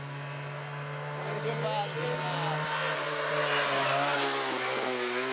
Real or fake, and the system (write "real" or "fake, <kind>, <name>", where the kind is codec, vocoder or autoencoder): real